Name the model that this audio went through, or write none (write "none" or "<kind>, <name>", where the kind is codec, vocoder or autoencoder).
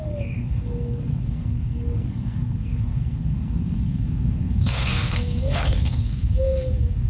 codec, SNAC